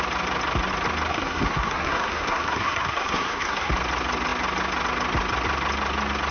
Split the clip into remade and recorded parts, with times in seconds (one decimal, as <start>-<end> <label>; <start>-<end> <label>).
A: 0.0-1.1 recorded; 1.1-3.7 remade; 3.7-6.3 recorded